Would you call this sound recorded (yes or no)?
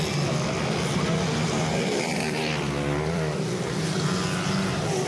yes